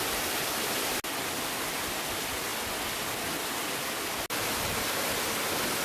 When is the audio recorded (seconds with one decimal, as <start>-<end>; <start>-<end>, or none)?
0.0-5.8